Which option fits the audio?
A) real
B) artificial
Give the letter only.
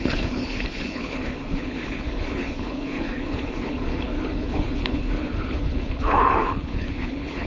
B